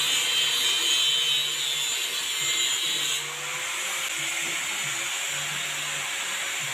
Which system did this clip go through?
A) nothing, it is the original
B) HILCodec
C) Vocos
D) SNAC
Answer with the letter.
A